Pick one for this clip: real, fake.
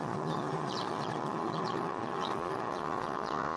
fake